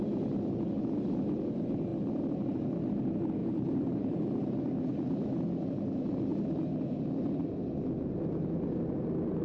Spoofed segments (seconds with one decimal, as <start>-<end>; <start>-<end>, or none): 3.4-4.2